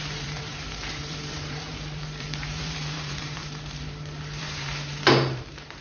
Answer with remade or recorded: remade